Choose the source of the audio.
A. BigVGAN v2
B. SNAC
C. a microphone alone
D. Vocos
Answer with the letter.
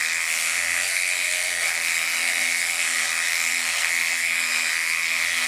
B